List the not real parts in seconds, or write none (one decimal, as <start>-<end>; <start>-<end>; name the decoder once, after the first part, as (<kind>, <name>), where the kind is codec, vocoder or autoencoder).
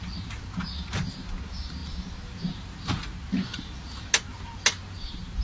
none